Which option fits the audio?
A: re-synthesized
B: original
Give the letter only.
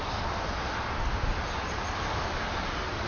B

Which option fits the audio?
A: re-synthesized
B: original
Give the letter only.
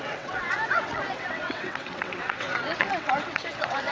A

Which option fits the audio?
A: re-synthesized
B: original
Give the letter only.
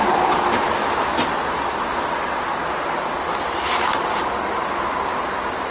B